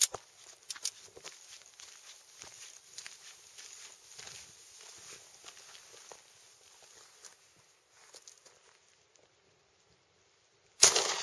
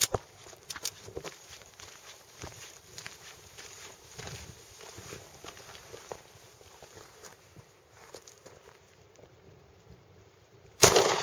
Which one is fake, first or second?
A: second